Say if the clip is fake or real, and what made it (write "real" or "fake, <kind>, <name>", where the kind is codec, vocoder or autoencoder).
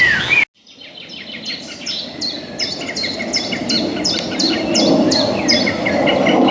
real